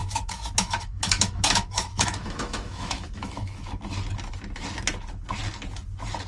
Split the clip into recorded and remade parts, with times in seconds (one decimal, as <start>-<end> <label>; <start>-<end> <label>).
0.0-3.8 remade; 3.8-6.3 recorded